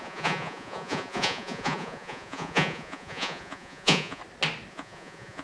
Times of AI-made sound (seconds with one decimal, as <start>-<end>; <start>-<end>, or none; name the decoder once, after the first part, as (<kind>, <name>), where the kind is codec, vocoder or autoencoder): 0.0-4.2 (vocoder, Vocos); 4.7-5.4